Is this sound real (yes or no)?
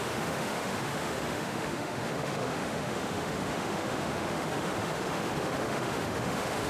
no